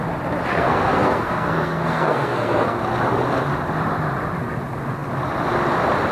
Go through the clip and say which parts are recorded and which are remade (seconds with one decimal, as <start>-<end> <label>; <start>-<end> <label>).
0.0-0.5 recorded; 0.5-2.8 remade; 2.8-6.1 recorded